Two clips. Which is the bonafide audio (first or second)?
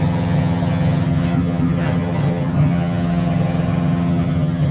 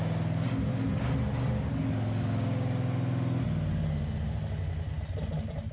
second